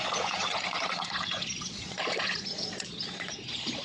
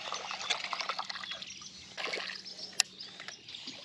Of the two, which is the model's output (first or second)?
first